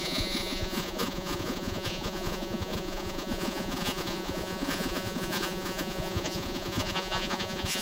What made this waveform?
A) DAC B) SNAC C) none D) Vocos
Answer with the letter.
D